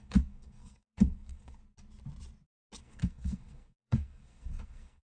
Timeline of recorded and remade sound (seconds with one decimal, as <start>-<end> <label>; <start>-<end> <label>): 0.0-1.6 remade; 1.6-2.8 recorded; 2.8-5.1 remade